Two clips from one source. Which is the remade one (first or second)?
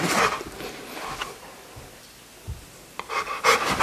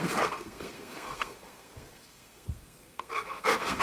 second